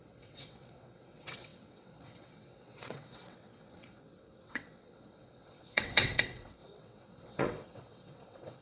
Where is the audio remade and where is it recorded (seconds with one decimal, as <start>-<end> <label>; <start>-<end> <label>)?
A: 0.0-8.6 remade